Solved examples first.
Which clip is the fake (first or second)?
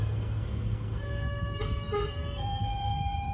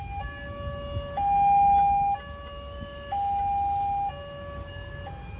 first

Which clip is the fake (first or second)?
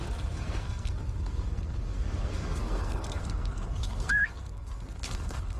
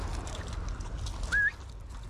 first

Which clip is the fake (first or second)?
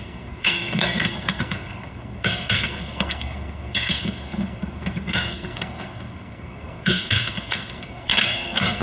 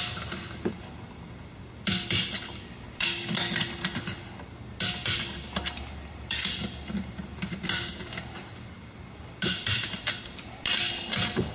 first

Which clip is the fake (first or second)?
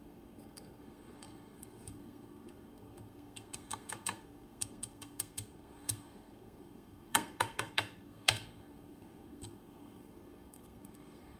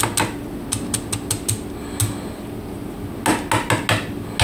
first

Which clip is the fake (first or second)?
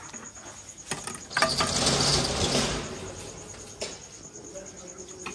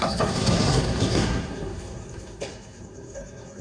second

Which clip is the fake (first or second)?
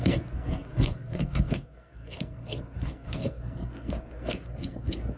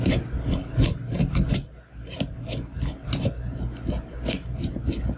first